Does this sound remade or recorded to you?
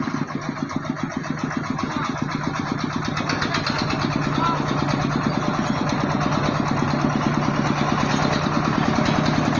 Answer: recorded